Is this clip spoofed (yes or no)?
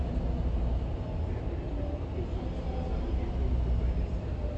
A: no